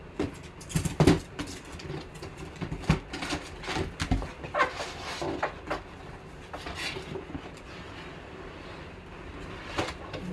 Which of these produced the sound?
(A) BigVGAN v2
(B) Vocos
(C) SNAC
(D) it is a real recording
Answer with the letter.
D